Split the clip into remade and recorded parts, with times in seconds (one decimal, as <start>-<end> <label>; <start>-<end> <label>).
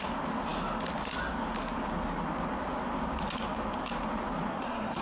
0.0-4.5 recorded; 4.5-5.0 remade